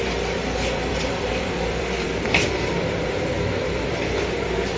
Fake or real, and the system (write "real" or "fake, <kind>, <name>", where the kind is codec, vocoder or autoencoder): fake, vocoder, BigVGAN v2